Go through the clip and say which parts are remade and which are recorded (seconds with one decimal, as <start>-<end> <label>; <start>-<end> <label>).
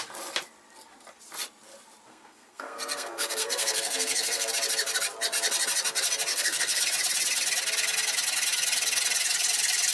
0.0-2.1 recorded; 2.1-4.5 remade; 4.5-6.3 recorded; 6.3-6.8 remade; 6.8-9.9 recorded